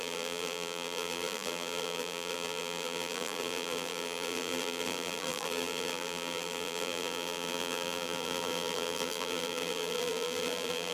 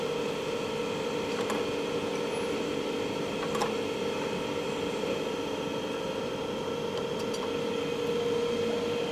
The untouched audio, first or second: second